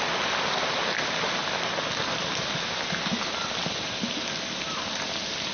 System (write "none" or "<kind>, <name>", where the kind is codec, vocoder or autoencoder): none